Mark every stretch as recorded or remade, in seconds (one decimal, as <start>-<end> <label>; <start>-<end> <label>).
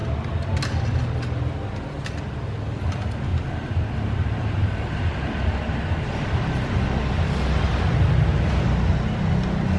0.0-0.8 remade; 0.8-3.3 recorded; 3.3-8.0 remade; 8.0-9.8 recorded